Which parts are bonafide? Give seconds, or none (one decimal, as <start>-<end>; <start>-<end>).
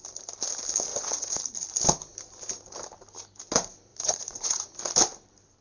0.0-0.9; 1.4-3.9; 4.7-5.6